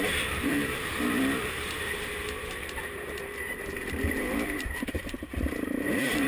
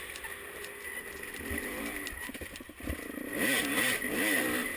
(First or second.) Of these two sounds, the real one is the second